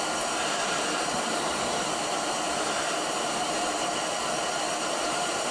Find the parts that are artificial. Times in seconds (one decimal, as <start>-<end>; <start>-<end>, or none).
0.6-3.9